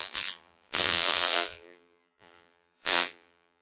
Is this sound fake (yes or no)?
yes